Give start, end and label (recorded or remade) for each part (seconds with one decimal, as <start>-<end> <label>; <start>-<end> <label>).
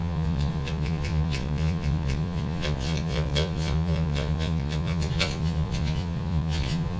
0.0-7.0 remade